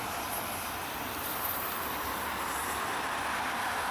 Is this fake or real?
fake